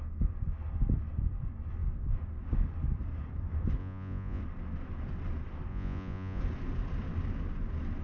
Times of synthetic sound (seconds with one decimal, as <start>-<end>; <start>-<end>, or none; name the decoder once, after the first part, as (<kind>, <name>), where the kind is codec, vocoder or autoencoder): 3.8-4.4 (vocoder, Vocos); 5.7-6.4